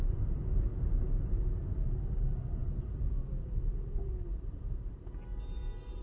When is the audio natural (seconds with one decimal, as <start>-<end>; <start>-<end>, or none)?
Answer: 0.0-6.0